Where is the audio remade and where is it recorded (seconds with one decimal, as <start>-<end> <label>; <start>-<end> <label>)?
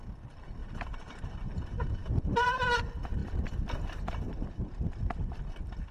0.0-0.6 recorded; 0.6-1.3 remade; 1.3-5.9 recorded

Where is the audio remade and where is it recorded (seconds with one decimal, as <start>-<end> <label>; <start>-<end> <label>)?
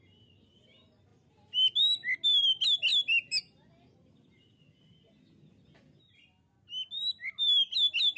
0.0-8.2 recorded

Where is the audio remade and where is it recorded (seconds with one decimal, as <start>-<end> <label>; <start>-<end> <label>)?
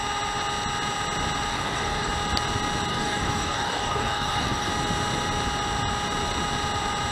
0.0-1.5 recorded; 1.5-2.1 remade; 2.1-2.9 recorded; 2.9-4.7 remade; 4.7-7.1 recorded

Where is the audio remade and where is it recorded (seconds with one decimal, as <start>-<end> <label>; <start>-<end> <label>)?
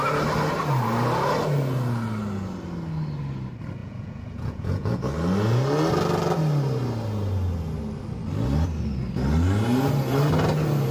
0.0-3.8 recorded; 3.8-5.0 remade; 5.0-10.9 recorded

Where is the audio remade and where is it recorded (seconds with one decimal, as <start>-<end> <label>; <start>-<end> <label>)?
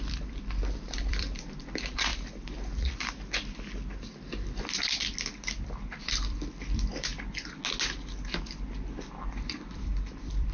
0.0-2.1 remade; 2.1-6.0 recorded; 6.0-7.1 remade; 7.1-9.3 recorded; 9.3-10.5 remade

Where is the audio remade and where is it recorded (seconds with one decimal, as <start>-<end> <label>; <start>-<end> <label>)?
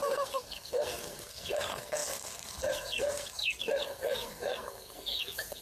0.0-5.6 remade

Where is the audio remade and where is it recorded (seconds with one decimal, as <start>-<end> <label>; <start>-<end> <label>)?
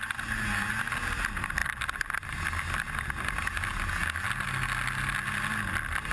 0.0-6.1 recorded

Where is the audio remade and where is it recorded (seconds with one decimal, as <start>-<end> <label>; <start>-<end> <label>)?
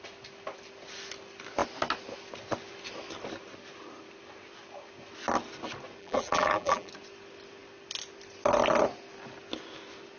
0.0-6.0 recorded; 6.0-6.9 remade; 6.9-10.2 recorded